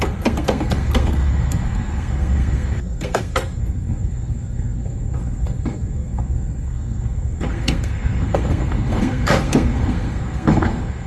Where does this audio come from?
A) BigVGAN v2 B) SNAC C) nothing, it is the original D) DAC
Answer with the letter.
B